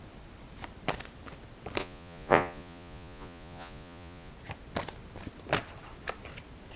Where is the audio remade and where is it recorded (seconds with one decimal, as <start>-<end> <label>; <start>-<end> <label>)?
0.0-1.8 recorded; 1.8-4.3 remade; 4.3-6.8 recorded